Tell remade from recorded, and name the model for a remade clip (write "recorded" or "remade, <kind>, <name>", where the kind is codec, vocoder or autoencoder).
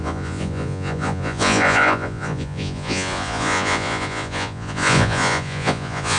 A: remade, vocoder, Vocos